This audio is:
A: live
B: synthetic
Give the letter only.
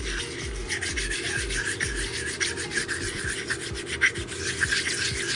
A